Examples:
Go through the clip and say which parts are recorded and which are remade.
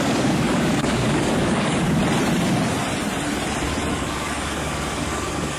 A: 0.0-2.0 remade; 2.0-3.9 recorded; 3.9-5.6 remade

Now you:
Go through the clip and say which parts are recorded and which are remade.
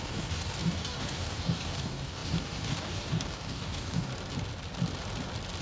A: 0.0-4.1 remade; 4.1-5.6 recorded